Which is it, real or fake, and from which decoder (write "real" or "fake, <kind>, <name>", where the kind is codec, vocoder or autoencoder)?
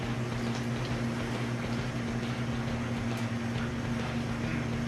real